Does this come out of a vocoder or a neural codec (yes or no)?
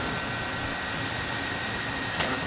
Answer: no